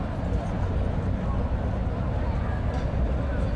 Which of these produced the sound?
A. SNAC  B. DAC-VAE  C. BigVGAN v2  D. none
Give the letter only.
D